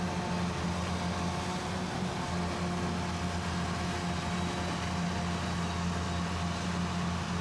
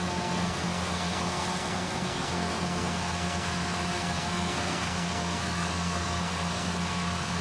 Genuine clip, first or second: first